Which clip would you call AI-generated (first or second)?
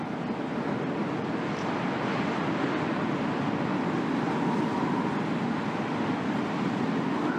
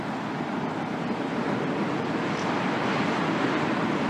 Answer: second